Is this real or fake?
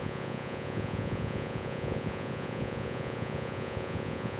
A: fake